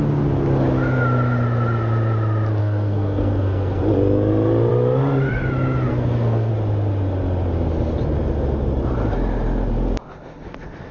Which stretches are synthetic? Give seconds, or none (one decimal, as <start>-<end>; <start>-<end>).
2.6-3.8; 5.9-6.5